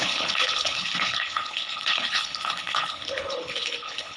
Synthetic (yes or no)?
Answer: yes